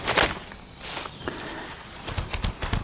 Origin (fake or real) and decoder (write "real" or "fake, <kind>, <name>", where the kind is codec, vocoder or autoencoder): real